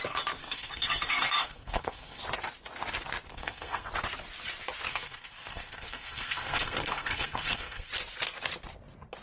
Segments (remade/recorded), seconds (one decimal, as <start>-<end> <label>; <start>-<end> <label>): 0.0-0.4 recorded; 0.4-2.2 remade; 2.2-3.3 recorded; 3.3-3.9 remade; 3.9-4.9 recorded; 4.9-7.9 remade; 7.9-9.2 recorded